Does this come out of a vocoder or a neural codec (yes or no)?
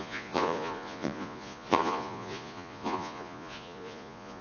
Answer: yes